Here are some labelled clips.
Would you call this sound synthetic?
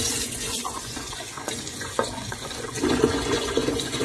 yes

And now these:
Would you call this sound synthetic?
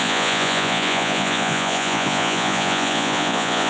yes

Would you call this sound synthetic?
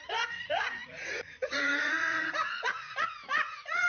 yes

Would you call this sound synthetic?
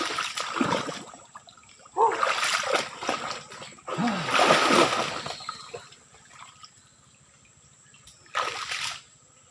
no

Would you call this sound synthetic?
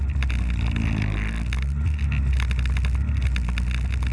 no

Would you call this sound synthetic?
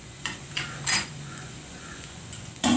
yes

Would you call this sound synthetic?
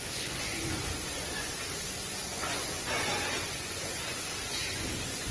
yes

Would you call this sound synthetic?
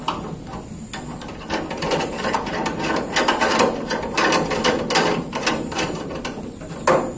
no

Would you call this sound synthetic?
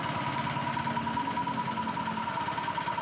no